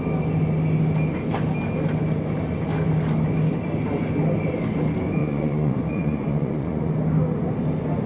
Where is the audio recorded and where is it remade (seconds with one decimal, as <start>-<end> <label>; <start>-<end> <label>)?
0.0-5.2 recorded; 5.2-6.9 remade; 6.9-8.1 recorded

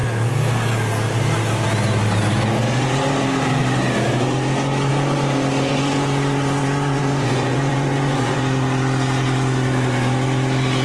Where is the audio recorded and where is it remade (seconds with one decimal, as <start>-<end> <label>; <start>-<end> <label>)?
0.0-5.7 recorded; 5.7-8.4 remade; 8.4-10.8 recorded

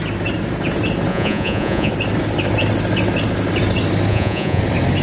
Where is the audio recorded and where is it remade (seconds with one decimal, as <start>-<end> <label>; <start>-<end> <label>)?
0.0-1.1 recorded; 1.1-1.9 remade; 1.9-4.1 recorded; 4.1-4.6 remade; 4.6-5.0 recorded

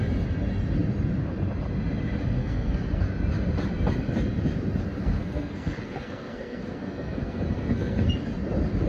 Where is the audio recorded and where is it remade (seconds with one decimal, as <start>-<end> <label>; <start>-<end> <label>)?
0.0-2.4 recorded; 2.4-3.0 remade; 3.0-5.0 recorded; 5.0-8.1 remade; 8.1-8.9 recorded

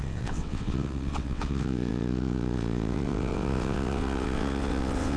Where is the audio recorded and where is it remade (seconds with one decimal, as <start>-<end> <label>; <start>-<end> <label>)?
0.0-5.2 remade

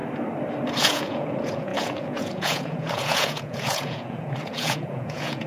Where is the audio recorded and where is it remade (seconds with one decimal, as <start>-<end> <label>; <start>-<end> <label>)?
0.0-0.8 recorded; 0.8-5.5 remade

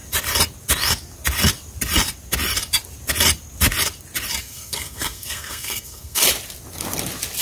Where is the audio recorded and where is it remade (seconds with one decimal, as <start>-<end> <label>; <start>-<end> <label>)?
0.0-4.4 recorded; 4.4-6.2 remade; 6.2-7.4 recorded

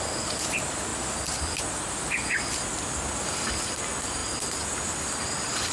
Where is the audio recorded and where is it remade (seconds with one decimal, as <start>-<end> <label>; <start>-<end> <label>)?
0.0-5.7 recorded